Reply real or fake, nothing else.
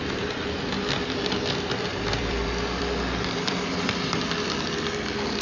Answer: fake